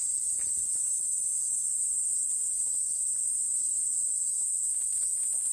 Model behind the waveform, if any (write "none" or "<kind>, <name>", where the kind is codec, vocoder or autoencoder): none